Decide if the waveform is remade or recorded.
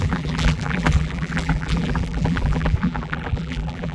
remade